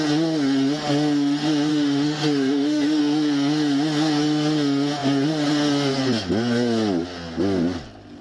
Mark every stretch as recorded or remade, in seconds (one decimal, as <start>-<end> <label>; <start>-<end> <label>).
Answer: 0.0-1.7 recorded; 1.7-3.0 remade; 3.0-8.2 recorded